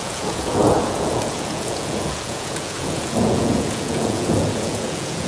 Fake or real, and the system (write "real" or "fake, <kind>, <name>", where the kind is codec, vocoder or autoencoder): fake, vocoder, Vocos